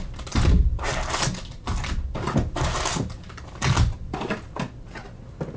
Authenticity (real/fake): real